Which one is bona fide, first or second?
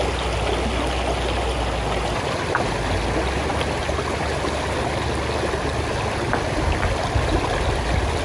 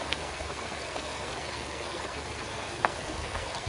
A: first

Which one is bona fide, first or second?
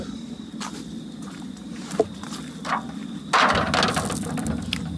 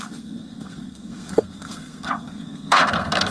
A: first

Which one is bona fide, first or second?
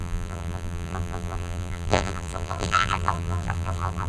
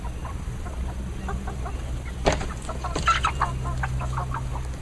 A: second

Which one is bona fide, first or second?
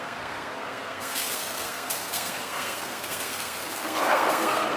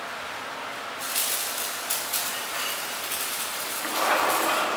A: second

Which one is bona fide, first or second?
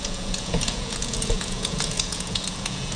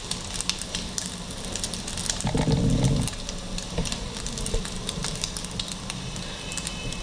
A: second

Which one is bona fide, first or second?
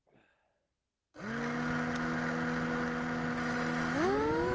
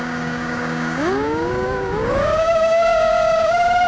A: first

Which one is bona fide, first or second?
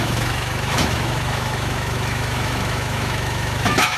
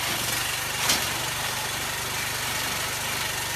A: second